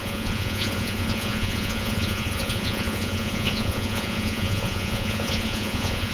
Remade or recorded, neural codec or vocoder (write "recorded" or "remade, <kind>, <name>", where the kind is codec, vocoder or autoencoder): remade, vocoder, Vocos